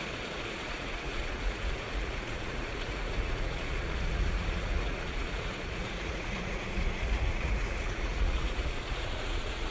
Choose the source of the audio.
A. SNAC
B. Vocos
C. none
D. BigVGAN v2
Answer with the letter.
B